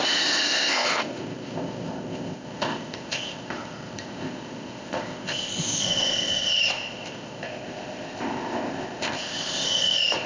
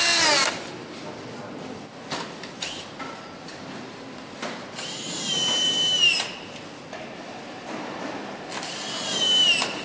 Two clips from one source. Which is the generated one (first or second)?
first